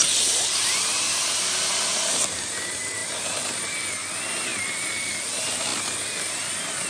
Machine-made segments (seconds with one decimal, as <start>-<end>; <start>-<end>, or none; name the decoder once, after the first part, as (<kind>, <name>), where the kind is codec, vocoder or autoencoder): none